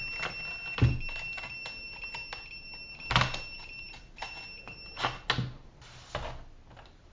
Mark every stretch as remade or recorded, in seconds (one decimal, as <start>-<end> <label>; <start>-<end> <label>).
0.0-7.1 recorded